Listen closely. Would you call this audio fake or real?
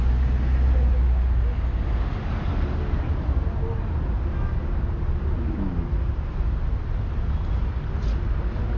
real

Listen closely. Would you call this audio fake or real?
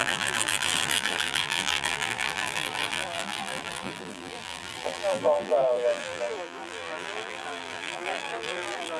fake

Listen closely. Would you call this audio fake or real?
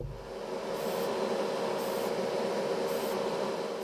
real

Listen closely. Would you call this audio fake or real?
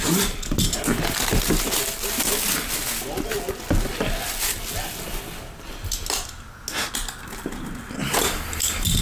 real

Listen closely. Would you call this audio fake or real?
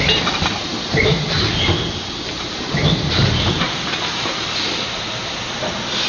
fake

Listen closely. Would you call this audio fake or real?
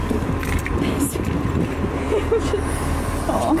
fake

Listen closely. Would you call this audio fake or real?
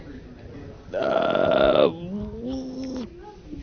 real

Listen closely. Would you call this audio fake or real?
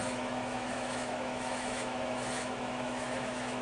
fake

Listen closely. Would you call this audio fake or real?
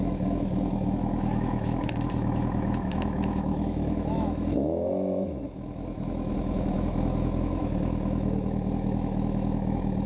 fake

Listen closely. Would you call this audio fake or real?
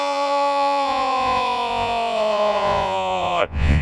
fake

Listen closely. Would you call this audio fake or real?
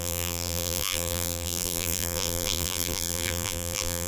fake